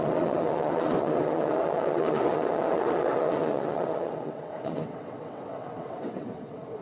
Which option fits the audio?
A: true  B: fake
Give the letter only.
B